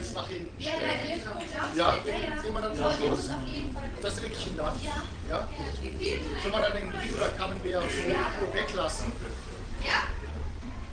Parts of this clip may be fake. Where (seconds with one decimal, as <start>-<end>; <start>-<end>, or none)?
0.0-8.7; 9.7-10.9